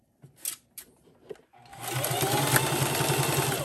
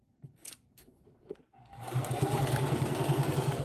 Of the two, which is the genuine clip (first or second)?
first